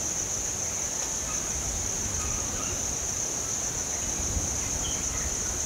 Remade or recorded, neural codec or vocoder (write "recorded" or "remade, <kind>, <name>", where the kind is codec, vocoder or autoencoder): recorded